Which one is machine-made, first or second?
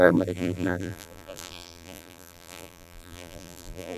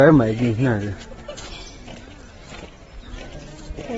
first